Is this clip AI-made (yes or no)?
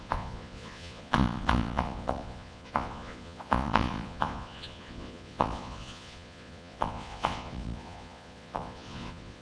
yes